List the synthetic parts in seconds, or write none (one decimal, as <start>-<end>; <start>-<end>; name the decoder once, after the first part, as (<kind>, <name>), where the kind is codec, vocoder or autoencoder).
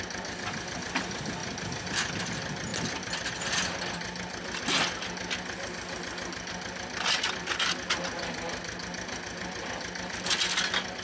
1.4-2.1 (vocoder, BigVGAN v2); 2.7-3.3